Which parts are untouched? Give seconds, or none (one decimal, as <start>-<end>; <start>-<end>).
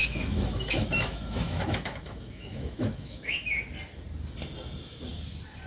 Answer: 3.4-5.7